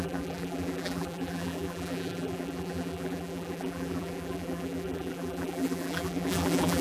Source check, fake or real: fake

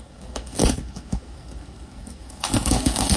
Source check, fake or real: fake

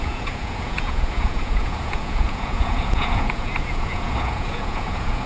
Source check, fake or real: fake